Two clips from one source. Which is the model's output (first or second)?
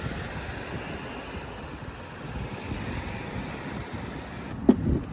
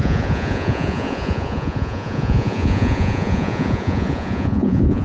second